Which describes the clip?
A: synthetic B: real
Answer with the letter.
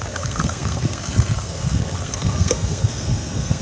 A